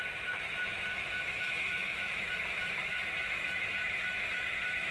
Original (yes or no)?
no